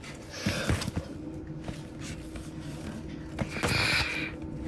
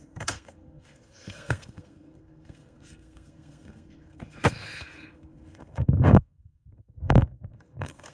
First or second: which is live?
first